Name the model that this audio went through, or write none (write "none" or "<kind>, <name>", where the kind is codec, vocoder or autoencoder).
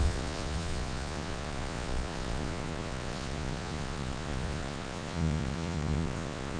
vocoder, Vocos